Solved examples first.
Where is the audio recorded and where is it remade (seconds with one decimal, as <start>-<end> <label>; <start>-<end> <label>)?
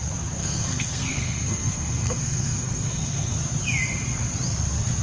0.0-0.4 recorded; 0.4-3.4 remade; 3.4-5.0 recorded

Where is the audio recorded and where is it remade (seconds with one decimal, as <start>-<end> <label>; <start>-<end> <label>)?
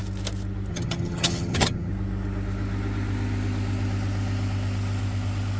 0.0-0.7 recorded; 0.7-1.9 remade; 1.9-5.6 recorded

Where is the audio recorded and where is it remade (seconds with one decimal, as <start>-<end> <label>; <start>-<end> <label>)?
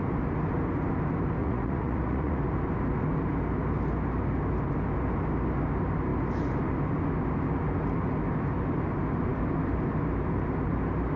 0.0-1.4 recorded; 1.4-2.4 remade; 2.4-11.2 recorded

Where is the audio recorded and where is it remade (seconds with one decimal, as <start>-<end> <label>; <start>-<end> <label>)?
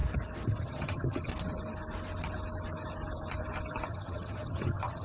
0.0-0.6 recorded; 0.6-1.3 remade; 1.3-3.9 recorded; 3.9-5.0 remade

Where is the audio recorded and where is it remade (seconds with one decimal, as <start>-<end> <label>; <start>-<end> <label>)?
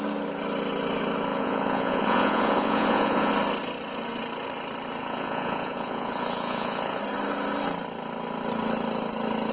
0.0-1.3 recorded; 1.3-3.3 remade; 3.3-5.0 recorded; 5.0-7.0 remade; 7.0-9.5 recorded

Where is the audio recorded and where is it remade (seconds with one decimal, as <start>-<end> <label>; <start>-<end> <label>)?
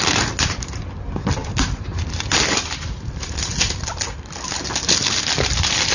0.0-5.9 recorded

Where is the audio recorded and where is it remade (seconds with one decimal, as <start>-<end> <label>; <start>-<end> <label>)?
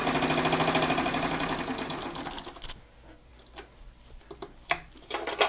0.0-5.5 recorded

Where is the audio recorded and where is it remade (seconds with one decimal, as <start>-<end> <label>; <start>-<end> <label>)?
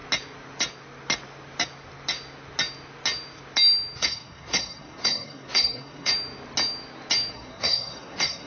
0.0-4.0 recorded; 4.0-6.1 remade; 6.1-7.3 recorded; 7.3-8.5 remade